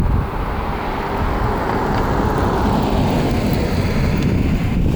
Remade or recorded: recorded